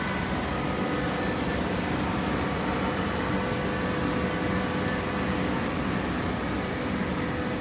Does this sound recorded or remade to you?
recorded